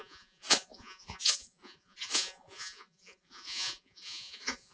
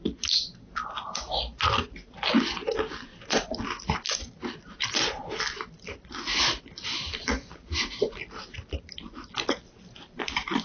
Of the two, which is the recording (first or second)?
second